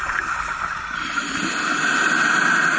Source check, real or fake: real